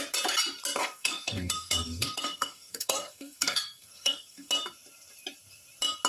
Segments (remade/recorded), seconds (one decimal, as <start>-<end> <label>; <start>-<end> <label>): 0.0-0.8 recorded; 0.8-4.5 remade; 4.5-6.1 recorded